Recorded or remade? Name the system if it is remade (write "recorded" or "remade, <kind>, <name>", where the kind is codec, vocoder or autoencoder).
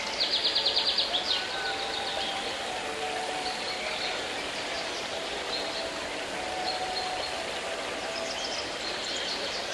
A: recorded